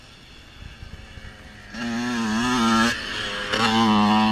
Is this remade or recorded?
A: recorded